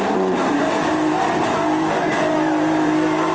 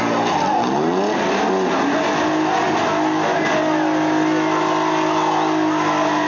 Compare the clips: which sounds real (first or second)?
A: second